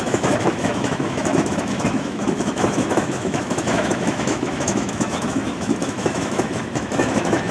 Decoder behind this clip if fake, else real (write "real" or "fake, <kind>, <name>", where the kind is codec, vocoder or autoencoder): fake, autoencoder, DAC-VAE